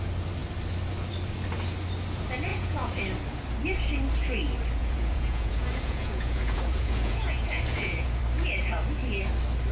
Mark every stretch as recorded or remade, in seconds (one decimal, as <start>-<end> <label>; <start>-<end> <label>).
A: 0.0-2.5 recorded; 2.5-3.0 remade; 3.0-4.8 recorded; 4.8-8.2 remade; 8.2-9.7 recorded